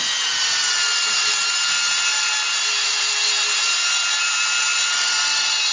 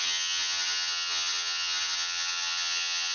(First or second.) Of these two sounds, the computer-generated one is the second